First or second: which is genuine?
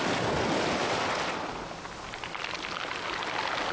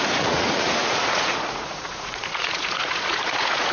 first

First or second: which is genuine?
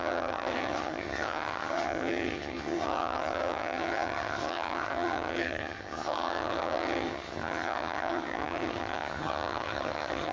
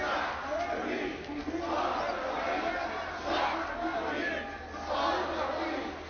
second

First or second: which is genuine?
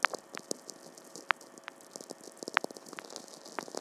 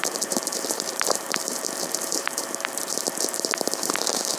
first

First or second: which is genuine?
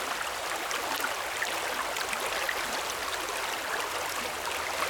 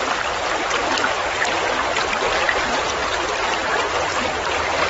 first